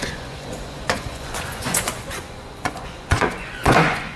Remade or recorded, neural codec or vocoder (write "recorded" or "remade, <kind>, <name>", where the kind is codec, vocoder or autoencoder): remade, vocoder, Vocos